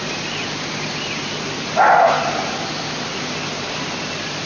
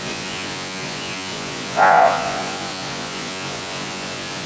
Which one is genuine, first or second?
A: first